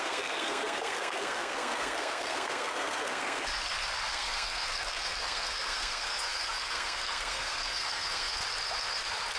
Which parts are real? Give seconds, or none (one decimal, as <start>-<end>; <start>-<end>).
3.5-4.1; 8.4-9.4